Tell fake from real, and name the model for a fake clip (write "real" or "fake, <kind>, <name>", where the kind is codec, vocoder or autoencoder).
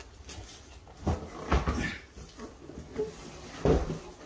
real